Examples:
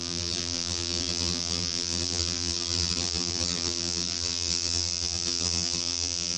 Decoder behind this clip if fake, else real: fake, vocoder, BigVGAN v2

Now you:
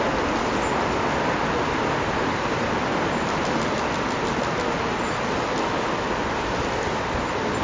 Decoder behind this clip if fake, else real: real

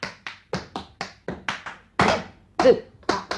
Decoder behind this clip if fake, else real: real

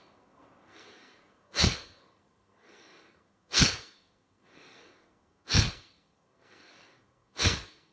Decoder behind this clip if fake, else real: fake, codec, SNAC